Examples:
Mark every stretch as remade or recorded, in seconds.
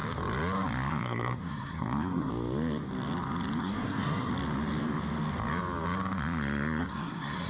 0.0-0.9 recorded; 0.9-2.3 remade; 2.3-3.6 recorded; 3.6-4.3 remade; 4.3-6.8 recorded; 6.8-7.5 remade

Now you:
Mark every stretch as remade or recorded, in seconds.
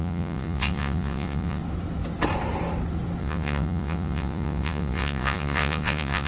0.0-1.6 remade; 1.6-3.2 recorded; 3.2-6.3 remade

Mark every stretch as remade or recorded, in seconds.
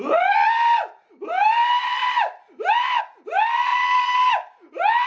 0.0-5.1 recorded